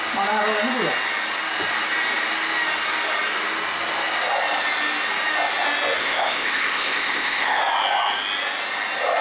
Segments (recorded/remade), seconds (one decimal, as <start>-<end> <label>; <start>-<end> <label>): 0.0-6.0 recorded; 6.0-7.6 remade; 7.6-9.2 recorded